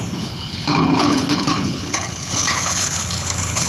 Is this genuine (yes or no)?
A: no